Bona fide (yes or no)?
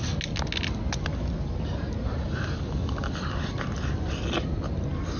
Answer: yes